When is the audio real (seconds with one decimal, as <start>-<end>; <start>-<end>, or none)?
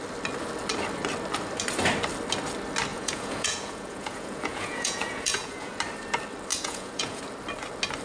0.0-2.9; 5.8-6.5; 7.2-8.0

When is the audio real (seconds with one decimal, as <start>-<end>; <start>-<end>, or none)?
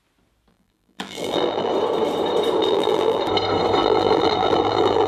0.0-0.5; 1.7-2.6; 3.2-3.8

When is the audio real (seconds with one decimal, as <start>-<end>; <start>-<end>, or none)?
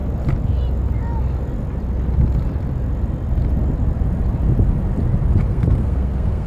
0.0-5.5